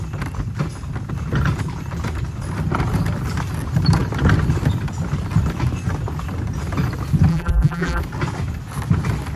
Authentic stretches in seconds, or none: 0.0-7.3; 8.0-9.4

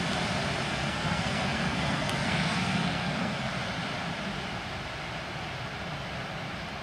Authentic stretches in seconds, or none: 0.0-0.7; 3.5-6.8

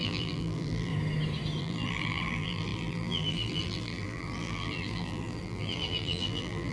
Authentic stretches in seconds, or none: 0.9-1.6

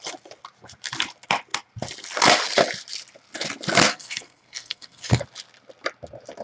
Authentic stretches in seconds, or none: 0.0-3.9; 5.2-6.4

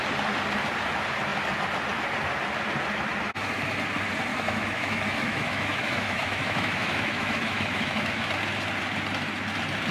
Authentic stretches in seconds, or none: 0.0-4.3; 8.3-9.9

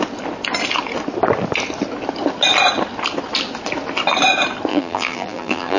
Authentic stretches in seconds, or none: 0.0-4.7